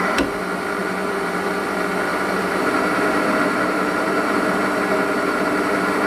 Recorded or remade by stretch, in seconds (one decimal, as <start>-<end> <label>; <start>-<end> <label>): 0.0-0.8 recorded; 0.8-1.5 remade; 1.5-2.1 recorded; 2.1-6.1 remade